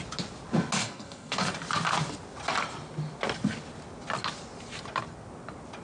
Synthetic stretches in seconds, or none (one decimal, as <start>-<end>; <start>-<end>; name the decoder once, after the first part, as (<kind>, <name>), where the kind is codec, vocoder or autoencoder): 0.8-1.5 (codec, SNAC)